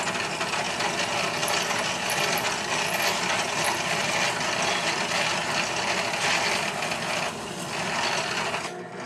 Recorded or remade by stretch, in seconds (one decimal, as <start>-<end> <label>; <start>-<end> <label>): 0.0-9.1 recorded